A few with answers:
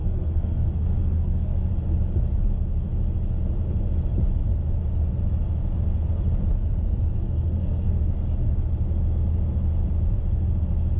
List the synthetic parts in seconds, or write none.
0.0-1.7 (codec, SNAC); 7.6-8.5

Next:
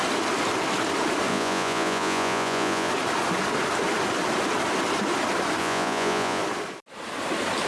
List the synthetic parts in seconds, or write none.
1.3-2.9 (vocoder, Vocos); 5.6-6.4

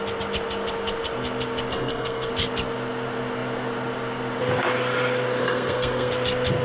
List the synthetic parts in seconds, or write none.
1.7-2.3 (codec, SNAC); 5.4-6.1